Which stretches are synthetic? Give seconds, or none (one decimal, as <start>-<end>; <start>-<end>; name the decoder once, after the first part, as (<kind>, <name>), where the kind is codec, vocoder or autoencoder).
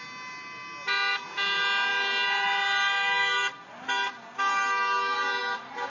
none